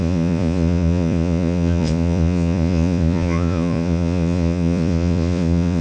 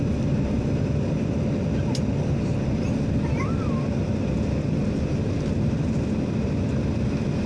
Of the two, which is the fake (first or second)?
first